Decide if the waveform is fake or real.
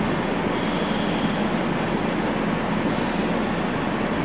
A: real